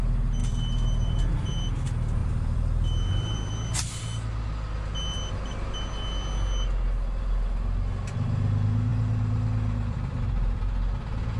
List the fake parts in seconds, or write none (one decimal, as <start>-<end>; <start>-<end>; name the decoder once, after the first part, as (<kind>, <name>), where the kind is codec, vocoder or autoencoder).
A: 0.4-1.2 (vocoder, BigVGAN v2); 2.2-3.5; 8.9-10.6